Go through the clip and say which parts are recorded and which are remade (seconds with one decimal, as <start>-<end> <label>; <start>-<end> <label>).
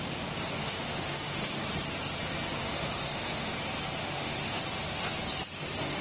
0.0-0.6 recorded; 0.6-1.4 remade; 1.4-2.6 recorded; 2.6-3.5 remade; 3.5-4.0 recorded; 4.0-4.6 remade; 4.6-6.0 recorded